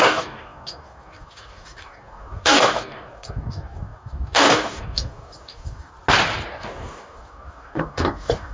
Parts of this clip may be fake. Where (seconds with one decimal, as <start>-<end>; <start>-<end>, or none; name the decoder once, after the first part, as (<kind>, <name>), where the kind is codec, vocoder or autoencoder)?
0.0-5.9 (codec, DAC); 6.5-8.5

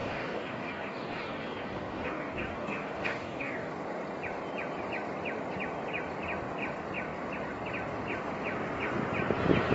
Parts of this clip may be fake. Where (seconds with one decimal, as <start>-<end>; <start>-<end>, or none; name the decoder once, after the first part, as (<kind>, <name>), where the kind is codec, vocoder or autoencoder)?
0.0-3.7 (codec, DAC)

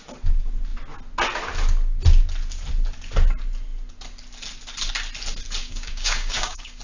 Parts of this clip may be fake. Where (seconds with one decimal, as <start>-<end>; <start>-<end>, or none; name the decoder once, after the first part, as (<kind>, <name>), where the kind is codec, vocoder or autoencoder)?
5.6-6.8 (codec, DAC)

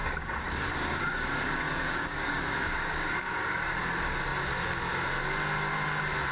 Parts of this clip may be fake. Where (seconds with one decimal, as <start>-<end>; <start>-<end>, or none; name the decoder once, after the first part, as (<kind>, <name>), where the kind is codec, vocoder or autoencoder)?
0.0-3.8 (codec, DAC)